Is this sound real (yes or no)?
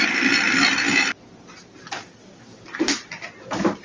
yes